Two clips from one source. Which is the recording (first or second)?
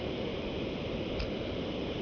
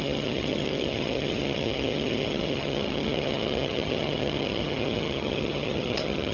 first